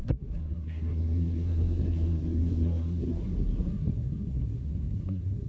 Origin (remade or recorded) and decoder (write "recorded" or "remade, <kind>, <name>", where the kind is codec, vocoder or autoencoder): remade, codec, SNAC